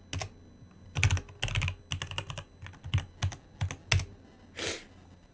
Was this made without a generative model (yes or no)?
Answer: yes